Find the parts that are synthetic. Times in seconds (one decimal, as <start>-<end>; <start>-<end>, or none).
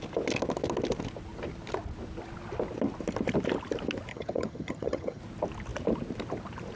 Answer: 4.1-5.2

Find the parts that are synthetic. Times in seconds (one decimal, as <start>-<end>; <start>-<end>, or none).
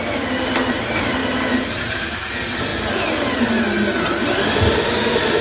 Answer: 1.2-2.3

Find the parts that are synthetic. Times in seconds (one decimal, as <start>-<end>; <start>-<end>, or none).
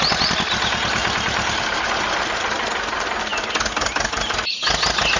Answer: 1.0-1.9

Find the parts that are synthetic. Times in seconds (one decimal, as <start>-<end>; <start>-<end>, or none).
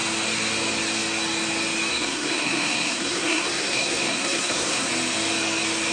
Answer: 1.9-4.9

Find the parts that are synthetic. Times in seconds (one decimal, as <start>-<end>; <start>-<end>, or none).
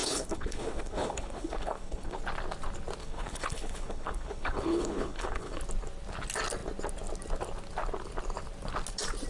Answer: 0.0-2.2; 3.0-5.6